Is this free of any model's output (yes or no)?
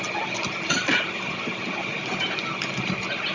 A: no